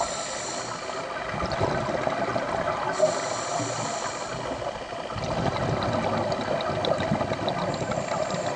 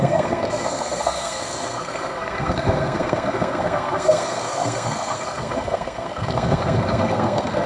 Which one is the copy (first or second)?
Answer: second